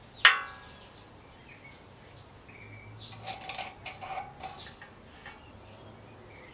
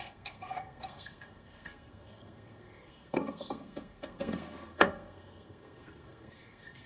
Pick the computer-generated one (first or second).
second